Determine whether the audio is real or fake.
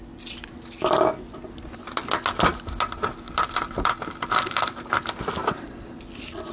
real